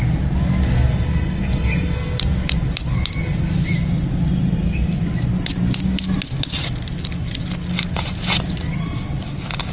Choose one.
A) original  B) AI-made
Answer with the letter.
A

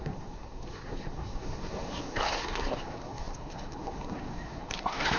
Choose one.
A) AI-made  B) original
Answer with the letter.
A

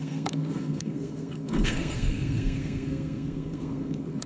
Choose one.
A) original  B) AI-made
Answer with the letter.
B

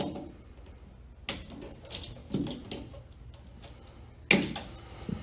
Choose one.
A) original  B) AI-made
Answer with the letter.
A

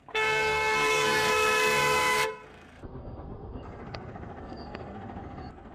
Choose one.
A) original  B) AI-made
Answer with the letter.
B